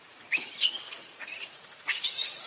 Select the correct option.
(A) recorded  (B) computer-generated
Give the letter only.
B